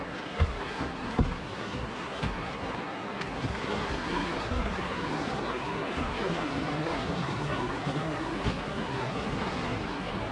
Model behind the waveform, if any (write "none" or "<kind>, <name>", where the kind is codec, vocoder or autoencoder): codec, SNAC